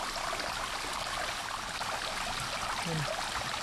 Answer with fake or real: real